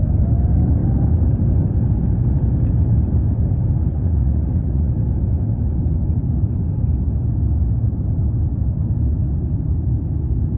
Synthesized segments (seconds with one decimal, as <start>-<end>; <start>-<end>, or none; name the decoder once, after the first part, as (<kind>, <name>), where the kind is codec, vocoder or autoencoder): 3.9-4.9 (vocoder, Vocos)